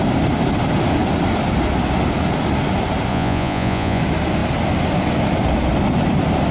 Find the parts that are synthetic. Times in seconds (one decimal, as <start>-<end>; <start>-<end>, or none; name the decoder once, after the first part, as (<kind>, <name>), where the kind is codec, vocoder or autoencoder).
3.1-4.0 (vocoder, Vocos)